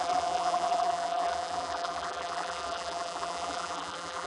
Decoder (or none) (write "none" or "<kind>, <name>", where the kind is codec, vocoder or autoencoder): vocoder, BigVGAN v2